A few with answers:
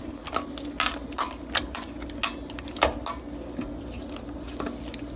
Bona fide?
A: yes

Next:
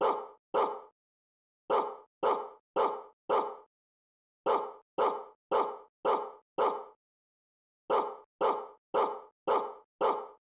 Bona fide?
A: yes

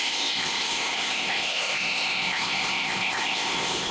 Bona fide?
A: no